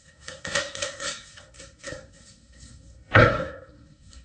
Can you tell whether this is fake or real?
fake